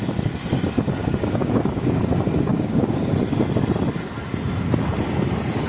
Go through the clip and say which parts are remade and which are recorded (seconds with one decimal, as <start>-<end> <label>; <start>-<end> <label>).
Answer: 0.0-1.0 recorded; 1.0-2.0 remade; 2.0-2.5 recorded; 2.5-3.1 remade; 3.1-5.7 recorded